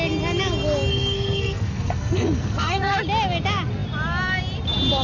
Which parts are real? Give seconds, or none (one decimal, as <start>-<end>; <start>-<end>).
0.0-0.9; 3.0-5.0